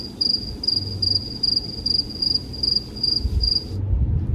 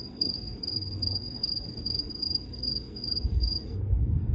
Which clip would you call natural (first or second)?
first